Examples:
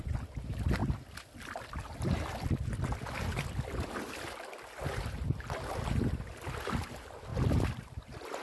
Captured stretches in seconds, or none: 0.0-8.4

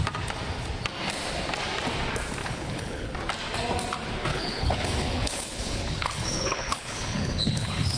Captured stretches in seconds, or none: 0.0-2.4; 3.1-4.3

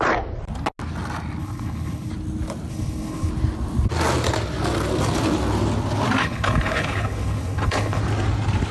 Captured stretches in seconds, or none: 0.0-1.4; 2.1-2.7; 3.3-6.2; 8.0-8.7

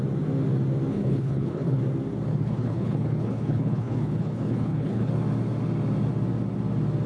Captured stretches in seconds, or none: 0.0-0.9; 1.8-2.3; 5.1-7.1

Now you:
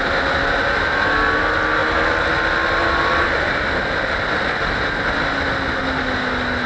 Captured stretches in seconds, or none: 0.0-6.7

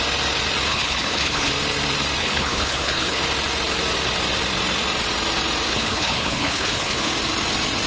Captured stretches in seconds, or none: 0.0-0.7; 1.5-2.2; 3.2-5.7; 7.1-7.9

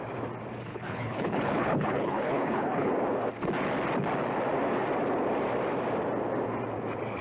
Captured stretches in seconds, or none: 0.0-0.7; 2.9-7.2

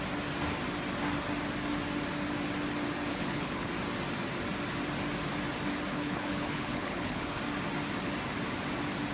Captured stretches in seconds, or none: 0.0-3.1; 3.7-5.9; 7.4-9.1